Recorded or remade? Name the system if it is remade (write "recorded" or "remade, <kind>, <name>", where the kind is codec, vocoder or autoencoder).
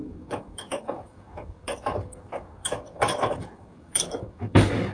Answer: remade, codec, DAC